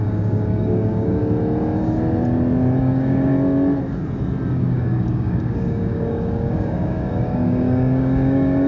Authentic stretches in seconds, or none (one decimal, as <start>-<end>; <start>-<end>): 1.2-2.8; 3.3-4.5